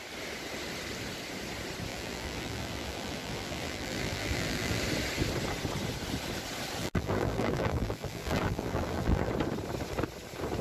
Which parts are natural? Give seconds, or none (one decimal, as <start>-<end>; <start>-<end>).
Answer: 0.0-1.9; 4.8-6.8; 9.3-10.6